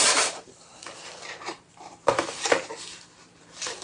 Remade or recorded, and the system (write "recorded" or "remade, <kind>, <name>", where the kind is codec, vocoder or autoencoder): remade, vocoder, BigVGAN v2